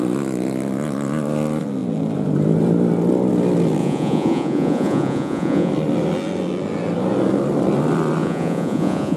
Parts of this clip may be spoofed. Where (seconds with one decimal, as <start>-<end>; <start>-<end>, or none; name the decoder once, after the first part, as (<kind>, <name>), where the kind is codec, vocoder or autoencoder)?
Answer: 3.8-5.7 (vocoder, Vocos); 8.2-9.2